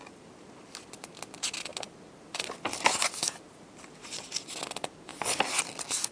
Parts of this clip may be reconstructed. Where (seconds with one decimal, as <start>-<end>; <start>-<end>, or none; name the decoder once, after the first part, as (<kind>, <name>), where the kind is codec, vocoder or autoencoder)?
none

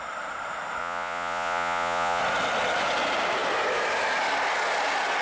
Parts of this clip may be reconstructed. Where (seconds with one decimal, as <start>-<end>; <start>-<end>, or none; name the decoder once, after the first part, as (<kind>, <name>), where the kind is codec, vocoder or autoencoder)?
0.8-2.2 (vocoder, Vocos)

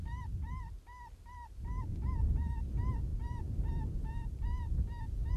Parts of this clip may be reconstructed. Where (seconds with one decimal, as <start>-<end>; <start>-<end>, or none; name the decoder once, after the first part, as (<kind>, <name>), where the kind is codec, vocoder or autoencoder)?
none

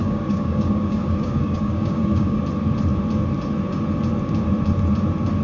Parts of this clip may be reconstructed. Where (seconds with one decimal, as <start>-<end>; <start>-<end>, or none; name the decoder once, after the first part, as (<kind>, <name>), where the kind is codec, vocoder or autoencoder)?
0.0-2.4 (codec, DAC)

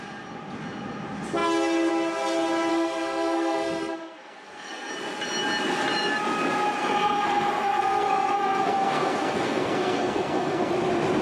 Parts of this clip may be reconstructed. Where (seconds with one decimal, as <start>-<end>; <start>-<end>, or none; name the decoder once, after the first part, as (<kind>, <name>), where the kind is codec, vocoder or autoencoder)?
2.7-4.9 (codec, SNAC); 6.8-10.7

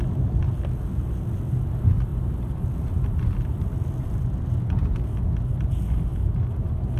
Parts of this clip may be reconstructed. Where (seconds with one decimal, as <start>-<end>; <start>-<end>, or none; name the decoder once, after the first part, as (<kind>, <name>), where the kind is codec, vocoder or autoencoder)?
none